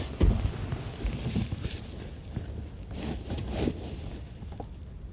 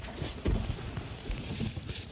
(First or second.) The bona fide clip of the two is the first